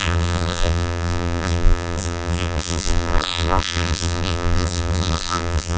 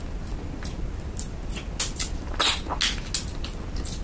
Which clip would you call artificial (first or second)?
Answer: first